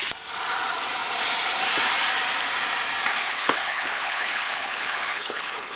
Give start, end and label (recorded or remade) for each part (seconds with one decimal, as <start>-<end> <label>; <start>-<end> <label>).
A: 0.0-3.1 recorded; 3.1-5.8 remade